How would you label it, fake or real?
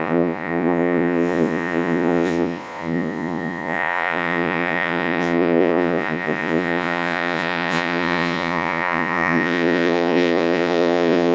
fake